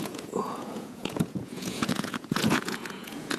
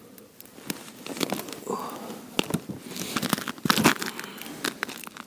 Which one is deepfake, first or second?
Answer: first